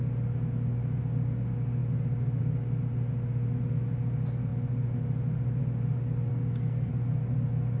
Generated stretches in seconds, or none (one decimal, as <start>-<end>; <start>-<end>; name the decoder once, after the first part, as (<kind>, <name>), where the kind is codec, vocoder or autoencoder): 6.3-6.9 (codec, SNAC)